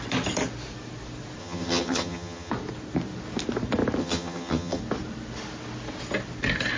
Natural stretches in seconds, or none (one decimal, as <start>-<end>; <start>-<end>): 0.0-1.4; 2.5-4.0; 4.8-6.8